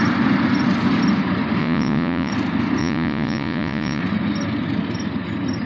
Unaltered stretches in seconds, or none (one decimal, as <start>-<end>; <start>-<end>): 0.0-1.6; 2.3-2.8; 4.0-5.7